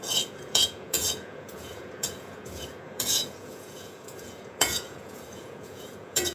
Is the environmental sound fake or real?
fake